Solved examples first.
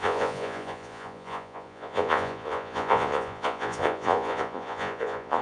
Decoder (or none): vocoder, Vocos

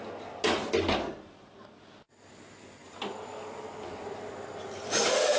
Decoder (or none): none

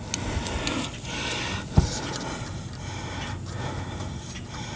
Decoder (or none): none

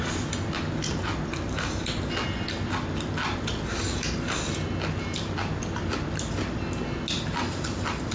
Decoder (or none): none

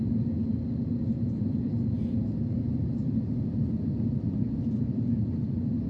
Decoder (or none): none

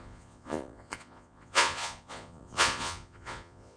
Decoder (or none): vocoder, Vocos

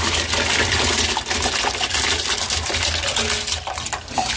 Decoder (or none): none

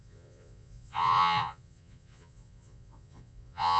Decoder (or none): vocoder, Vocos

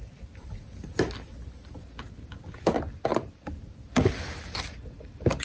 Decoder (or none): none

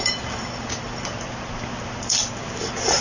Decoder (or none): none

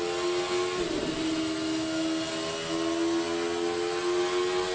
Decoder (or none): none